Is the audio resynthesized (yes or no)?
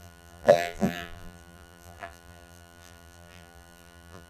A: yes